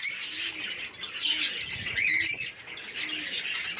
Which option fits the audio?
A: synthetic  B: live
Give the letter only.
B